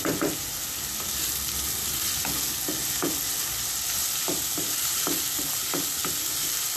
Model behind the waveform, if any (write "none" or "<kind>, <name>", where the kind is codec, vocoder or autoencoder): none